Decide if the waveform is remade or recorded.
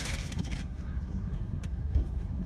remade